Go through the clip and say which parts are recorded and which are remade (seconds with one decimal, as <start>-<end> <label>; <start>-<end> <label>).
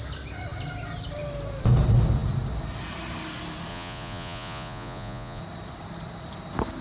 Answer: 0.0-3.7 recorded; 3.7-5.4 remade; 5.4-6.8 recorded